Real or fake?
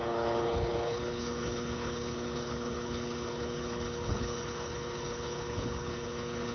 fake